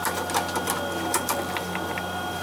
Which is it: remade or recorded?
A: recorded